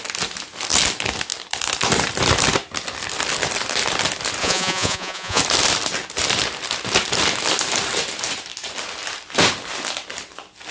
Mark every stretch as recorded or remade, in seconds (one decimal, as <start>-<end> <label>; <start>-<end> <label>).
0.0-4.4 recorded; 4.4-5.4 remade; 5.4-10.7 recorded